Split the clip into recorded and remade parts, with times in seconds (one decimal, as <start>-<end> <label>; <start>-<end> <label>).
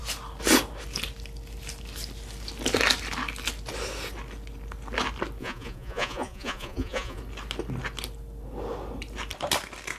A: 0.0-5.4 recorded; 5.4-7.2 remade; 7.2-10.0 recorded